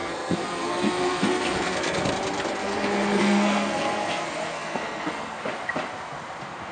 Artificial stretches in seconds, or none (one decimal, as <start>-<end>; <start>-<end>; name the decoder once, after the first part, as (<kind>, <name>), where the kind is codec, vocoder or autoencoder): 0.0-2.1 (codec, SNAC); 2.6-5.4